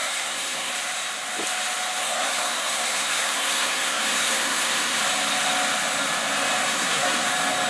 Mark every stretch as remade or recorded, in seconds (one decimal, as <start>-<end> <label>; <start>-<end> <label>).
0.0-0.7 remade; 0.7-2.0 recorded; 2.0-5.0 remade; 5.0-6.6 recorded; 6.6-7.3 remade; 7.3-7.7 recorded